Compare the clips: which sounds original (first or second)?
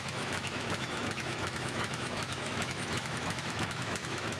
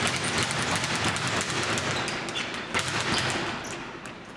second